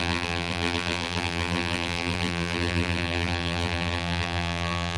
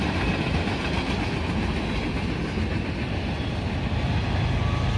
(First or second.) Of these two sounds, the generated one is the first